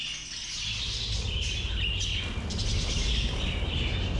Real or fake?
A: real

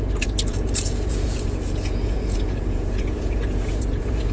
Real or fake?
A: fake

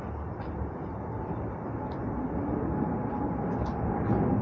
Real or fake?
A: real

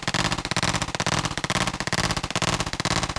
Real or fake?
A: real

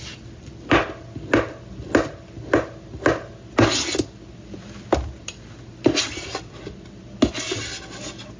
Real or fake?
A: real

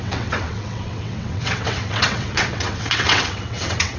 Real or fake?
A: fake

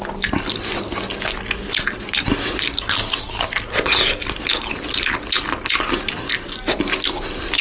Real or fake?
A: real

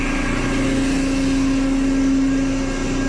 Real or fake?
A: real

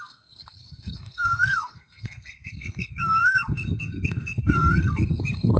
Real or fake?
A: fake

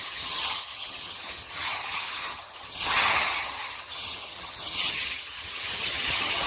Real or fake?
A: fake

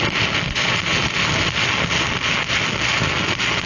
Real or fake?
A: real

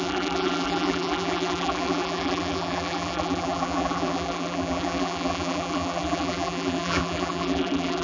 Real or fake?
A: fake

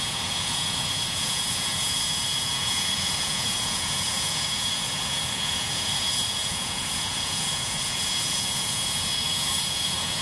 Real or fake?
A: fake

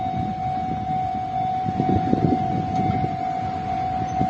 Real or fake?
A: real